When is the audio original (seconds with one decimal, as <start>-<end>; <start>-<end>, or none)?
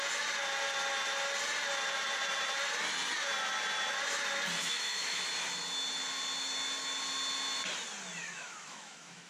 0.0-4.6; 5.2-8.2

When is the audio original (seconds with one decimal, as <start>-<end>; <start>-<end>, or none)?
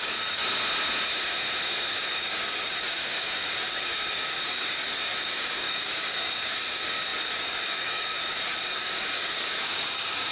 0.4-1.9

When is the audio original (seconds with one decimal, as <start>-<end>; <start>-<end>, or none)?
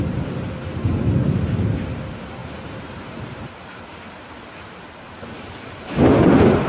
0.0-0.7; 1.8-2.4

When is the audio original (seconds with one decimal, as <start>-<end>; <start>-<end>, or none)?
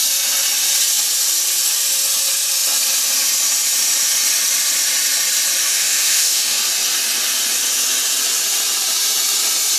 0.0-5.6; 6.6-9.8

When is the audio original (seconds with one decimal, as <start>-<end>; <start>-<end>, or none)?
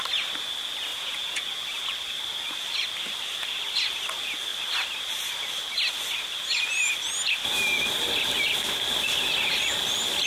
0.0-0.9; 1.4-10.3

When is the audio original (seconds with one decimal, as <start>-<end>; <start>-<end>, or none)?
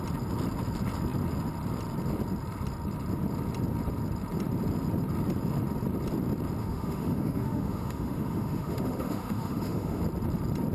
0.0-6.6; 10.0-10.7